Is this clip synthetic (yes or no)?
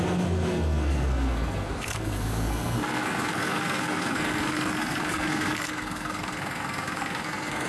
yes